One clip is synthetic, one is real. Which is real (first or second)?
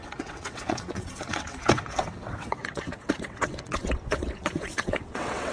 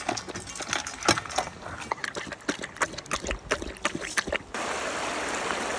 second